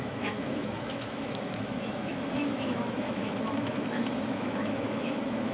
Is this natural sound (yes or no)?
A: no